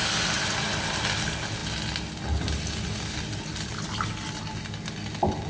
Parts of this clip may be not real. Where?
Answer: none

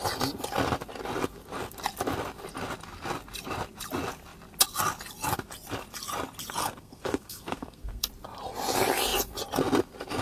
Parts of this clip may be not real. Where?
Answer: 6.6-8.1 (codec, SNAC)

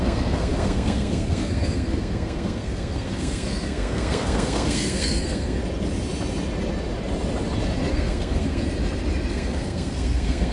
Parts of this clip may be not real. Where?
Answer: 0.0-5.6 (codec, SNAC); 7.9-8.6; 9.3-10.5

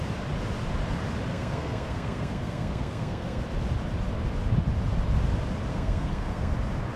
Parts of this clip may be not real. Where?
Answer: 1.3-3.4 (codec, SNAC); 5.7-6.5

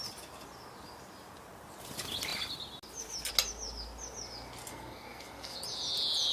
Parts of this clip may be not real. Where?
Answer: 4.7-5.6 (codec, SNAC)

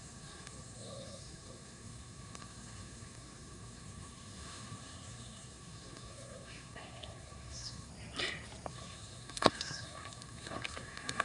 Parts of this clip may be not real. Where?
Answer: 0.0-7.9 (codec, SNAC); 8.7-11.2